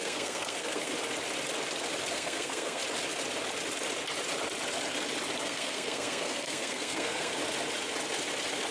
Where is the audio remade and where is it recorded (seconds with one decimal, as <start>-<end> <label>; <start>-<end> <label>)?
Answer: 0.0-0.9 remade; 0.9-2.1 recorded; 2.1-2.8 remade; 2.8-5.4 recorded; 5.4-7.3 remade; 7.3-8.7 recorded